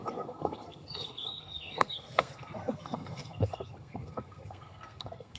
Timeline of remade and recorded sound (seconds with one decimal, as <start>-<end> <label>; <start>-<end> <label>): 0.0-5.4 remade